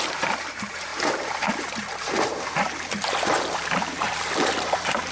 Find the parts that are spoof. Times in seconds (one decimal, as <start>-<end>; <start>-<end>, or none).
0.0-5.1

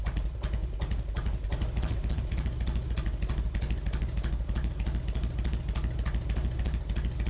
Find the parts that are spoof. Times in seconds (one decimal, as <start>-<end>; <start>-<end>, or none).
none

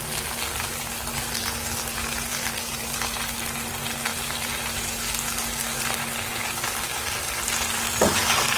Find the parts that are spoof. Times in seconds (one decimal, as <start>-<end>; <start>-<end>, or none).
4.1-4.8